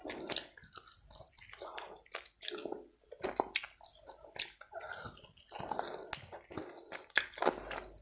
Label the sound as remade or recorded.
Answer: recorded